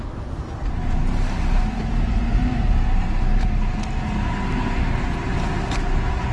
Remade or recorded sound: recorded